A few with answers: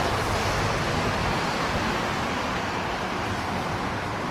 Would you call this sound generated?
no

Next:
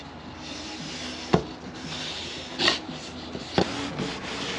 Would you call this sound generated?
no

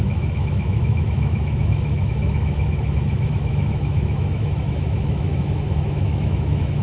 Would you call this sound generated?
yes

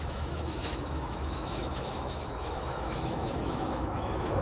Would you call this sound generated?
yes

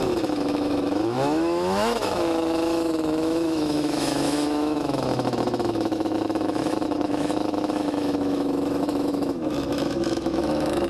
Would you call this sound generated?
yes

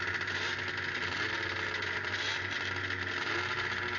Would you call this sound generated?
no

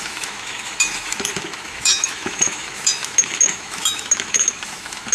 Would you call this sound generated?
yes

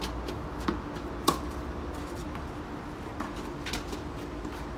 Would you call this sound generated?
no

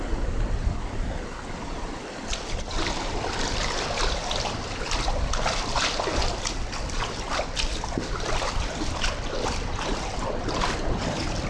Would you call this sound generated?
no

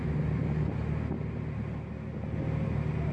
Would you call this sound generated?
no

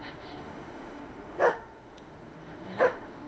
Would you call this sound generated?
yes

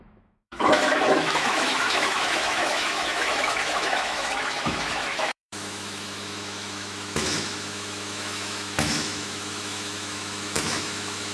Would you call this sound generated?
yes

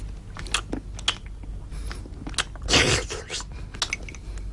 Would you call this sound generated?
no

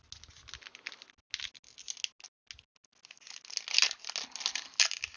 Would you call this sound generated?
no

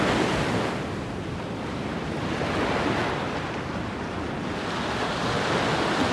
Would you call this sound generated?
no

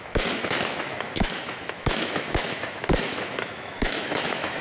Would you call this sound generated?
yes